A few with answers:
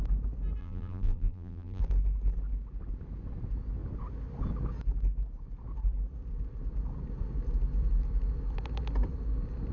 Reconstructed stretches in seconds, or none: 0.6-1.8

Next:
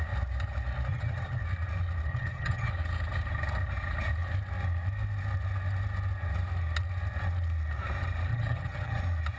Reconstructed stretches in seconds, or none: 0.9-1.4; 2.1-2.7; 8.3-9.0